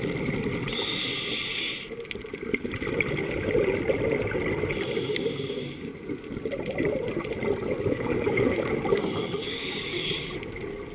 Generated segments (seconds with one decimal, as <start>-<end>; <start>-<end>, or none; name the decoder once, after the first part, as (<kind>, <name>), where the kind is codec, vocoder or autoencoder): 7.9-8.7 (codec, DAC); 9.2-10.1